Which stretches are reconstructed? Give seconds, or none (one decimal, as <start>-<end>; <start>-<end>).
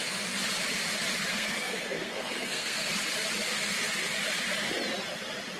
1.3-2.9